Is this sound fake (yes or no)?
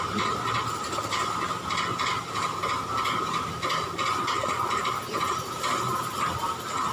no